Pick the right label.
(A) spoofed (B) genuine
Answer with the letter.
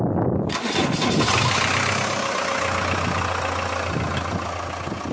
B